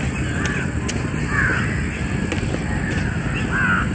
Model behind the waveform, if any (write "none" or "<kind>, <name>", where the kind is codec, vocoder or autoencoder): none